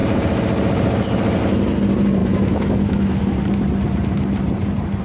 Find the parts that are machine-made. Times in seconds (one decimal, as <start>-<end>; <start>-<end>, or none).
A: 2.2-3.2